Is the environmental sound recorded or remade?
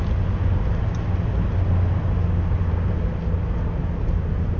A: recorded